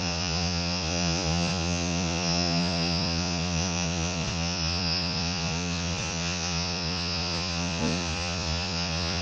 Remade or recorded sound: remade